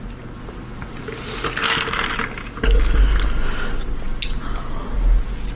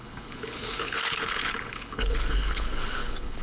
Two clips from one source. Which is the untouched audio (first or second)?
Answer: first